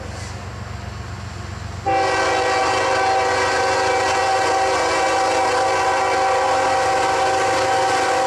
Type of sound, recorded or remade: recorded